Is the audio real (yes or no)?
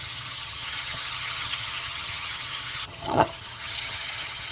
no